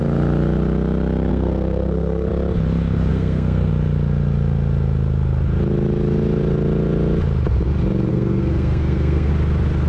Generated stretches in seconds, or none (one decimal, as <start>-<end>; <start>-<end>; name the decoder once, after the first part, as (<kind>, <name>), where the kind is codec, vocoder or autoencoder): 1.3-2.3 (codec, SNAC); 3.1-3.7; 8.1-9.3